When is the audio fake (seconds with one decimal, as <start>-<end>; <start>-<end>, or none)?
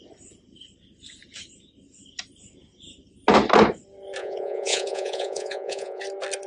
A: 4.2-6.0